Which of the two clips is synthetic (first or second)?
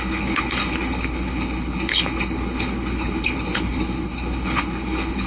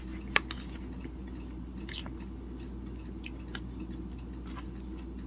first